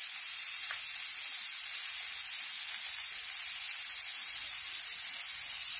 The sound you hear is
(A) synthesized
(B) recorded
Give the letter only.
B